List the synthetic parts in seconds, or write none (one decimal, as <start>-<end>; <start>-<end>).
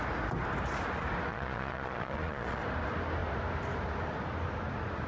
1.3-2.6